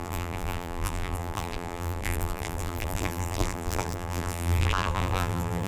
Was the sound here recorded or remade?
remade